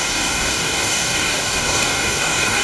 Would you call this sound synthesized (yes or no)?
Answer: yes